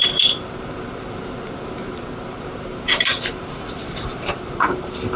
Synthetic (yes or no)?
yes